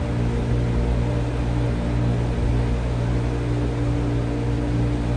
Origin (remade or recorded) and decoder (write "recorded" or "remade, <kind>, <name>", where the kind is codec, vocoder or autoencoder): recorded